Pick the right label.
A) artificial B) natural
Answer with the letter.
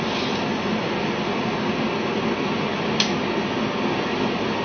B